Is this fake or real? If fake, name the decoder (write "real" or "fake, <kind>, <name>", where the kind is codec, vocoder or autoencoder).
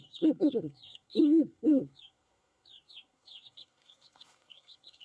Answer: fake, codec, SNAC